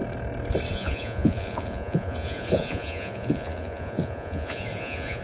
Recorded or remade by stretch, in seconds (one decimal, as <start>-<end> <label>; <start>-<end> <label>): 0.0-0.7 recorded; 0.7-5.2 remade